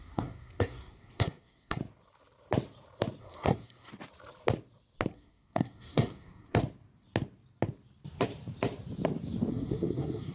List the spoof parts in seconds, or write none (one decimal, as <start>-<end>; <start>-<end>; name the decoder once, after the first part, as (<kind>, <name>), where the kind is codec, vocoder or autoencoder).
0.0-1.8 (codec, SNAC); 3.2-3.9; 5.1-6.6; 9.5-10.3